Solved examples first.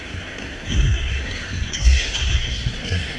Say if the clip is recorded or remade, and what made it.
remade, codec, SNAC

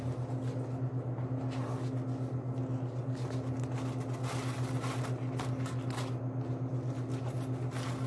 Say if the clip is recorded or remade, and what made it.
recorded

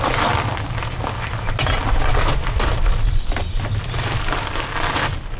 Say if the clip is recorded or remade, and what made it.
recorded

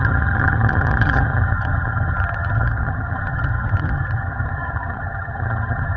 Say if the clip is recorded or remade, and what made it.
remade, vocoder, HiFi-GAN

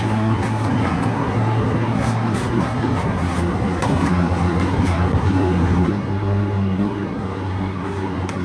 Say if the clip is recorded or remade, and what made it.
remade, codec, SNAC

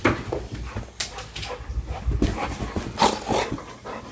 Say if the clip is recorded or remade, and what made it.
recorded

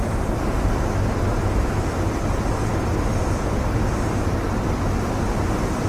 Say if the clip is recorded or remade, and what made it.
recorded